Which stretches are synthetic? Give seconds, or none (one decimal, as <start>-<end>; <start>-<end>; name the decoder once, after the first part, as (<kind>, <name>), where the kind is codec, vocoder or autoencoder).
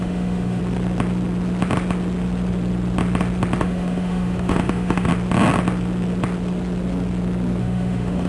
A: 0.0-0.6 (autoencoder, DAC-VAE); 3.6-5.1; 7.6-8.3